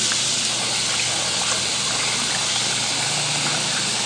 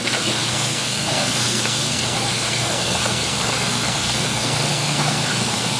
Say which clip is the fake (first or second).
second